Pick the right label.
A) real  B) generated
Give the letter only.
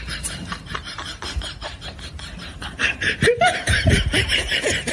B